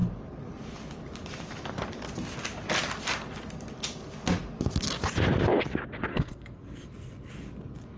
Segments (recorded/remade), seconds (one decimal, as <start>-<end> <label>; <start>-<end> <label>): 0.0-6.1 recorded; 6.1-7.3 remade; 7.3-8.0 recorded